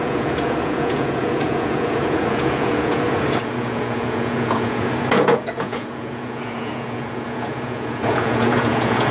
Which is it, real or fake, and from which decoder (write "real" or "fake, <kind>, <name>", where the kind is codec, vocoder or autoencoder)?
fake, vocoder, Vocos